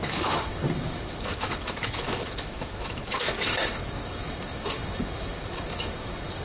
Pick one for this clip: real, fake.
fake